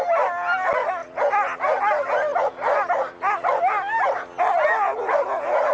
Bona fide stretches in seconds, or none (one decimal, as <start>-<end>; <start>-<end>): 0.0-5.7